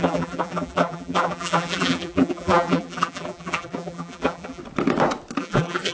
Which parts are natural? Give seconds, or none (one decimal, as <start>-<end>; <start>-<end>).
4.6-5.4